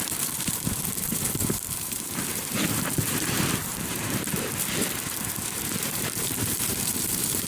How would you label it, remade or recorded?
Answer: remade